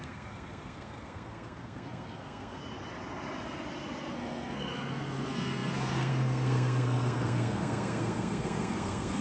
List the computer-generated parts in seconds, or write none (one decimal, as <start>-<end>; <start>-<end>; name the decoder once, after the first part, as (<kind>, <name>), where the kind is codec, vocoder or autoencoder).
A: 0.0-2.6 (codec, SNAC); 4.1-9.2